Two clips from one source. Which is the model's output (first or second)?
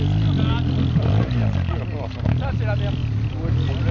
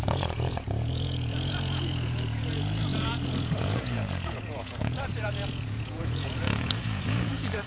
second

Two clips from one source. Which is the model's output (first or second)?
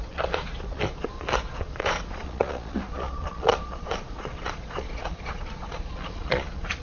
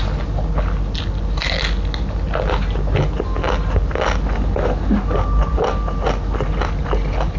first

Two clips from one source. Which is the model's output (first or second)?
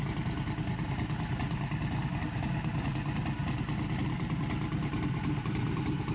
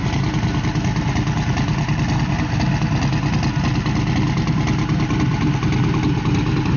first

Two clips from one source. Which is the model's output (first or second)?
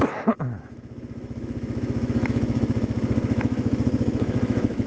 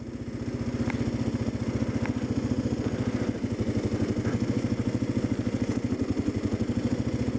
first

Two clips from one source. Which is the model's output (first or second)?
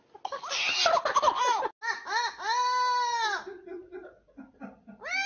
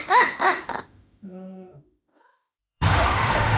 second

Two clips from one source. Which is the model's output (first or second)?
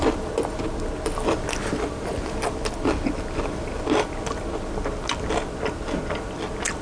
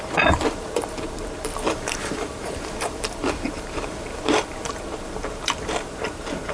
second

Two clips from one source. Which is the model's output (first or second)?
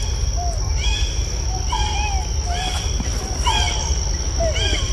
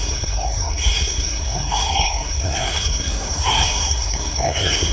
second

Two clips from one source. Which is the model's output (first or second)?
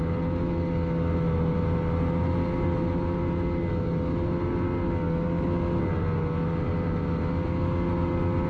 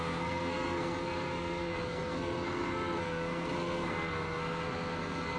second